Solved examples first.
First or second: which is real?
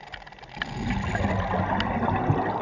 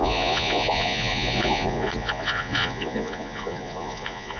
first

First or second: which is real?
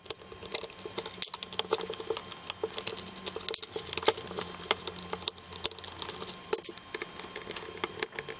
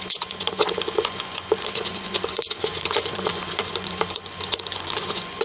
first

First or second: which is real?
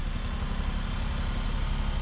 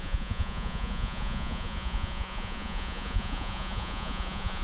first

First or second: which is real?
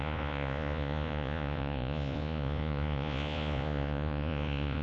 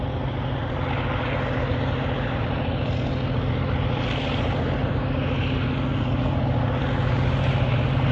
second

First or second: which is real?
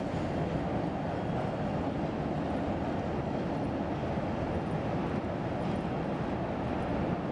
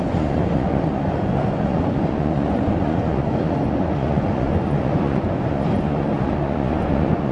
first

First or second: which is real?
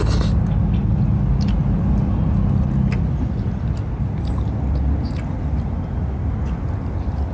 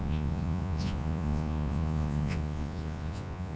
first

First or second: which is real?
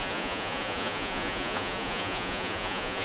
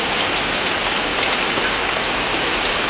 second